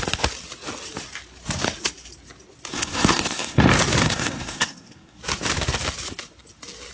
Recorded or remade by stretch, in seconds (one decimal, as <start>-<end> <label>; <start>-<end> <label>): 0.0-2.7 recorded; 2.7-3.6 remade; 3.6-4.0 recorded; 4.0-5.2 remade; 5.2-6.9 recorded